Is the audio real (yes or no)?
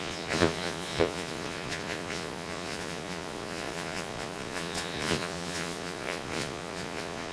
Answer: no